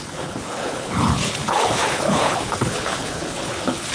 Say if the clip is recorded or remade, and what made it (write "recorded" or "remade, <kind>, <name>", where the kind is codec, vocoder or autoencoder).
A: remade, codec, HILCodec